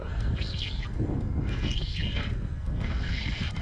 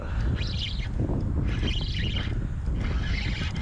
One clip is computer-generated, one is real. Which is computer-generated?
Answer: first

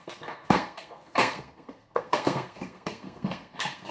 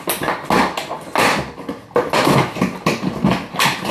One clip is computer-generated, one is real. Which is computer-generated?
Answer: first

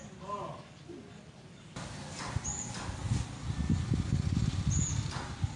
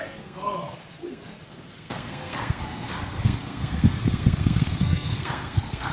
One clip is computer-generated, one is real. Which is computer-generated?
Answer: second